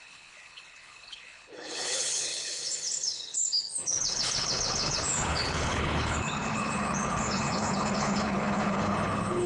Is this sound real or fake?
fake